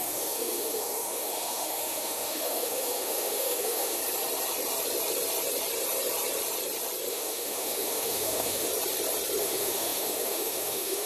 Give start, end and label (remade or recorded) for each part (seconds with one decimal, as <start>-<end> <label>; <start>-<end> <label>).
0.0-4.0 remade; 4.0-7.1 recorded; 7.1-8.7 remade; 8.7-9.4 recorded; 9.4-11.1 remade